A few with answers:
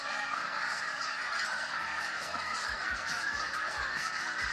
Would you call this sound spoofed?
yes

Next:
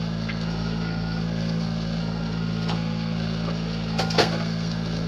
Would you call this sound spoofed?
yes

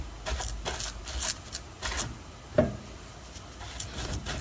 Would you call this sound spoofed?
no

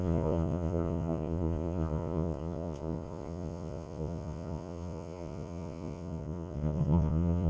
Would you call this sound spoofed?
yes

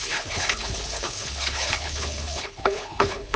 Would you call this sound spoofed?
yes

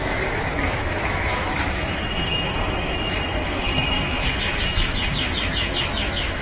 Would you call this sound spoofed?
yes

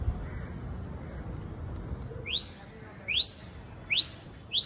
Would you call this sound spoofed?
no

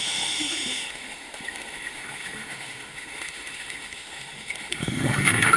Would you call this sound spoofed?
yes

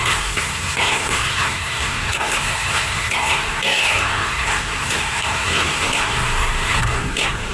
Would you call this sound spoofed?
yes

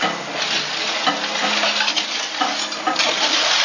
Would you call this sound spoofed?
no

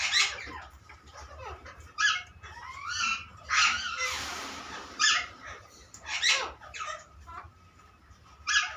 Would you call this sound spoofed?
yes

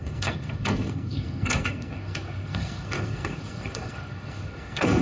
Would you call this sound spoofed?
yes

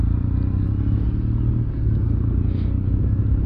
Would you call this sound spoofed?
no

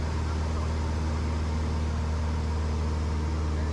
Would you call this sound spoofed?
no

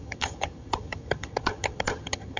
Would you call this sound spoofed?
yes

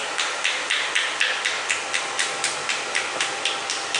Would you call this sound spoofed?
no